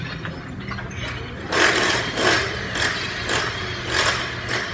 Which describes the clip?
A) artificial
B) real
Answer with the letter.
B